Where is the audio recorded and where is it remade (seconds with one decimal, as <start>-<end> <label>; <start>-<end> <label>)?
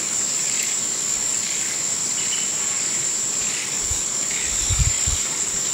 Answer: 0.0-2.0 remade; 2.0-3.3 recorded; 3.3-5.7 remade